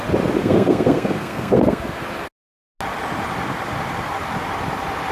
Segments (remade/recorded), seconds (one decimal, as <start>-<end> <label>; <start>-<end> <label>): 0.0-0.4 recorded; 0.4-2.0 remade; 2.0-5.1 recorded